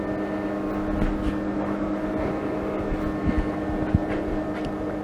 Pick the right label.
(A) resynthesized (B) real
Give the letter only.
B